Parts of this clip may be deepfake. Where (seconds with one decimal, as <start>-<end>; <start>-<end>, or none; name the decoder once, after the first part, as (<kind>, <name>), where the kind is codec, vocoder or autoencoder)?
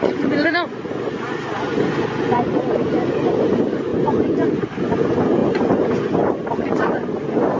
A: 0.0-7.6 (vocoder, Vocos)